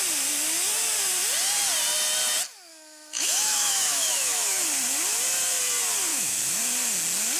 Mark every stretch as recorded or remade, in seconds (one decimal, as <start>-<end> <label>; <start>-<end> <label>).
0.0-2.7 recorded; 2.7-4.6 remade; 4.6-6.1 recorded; 6.1-6.6 remade; 6.6-7.4 recorded